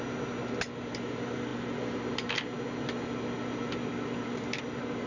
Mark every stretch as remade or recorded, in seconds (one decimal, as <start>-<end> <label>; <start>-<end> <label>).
0.0-5.1 recorded